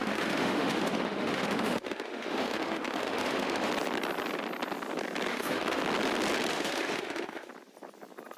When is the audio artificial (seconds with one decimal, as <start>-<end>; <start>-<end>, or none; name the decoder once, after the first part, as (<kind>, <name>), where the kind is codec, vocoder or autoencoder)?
0.0-3.7 (autoencoder, DAC-VAE); 5.3-5.8; 6.5-7.5